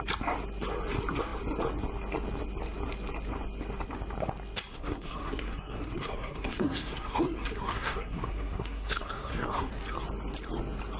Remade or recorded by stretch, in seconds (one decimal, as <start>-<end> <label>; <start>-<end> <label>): 0.0-4.7 recorded; 4.7-9.7 remade; 9.7-11.0 recorded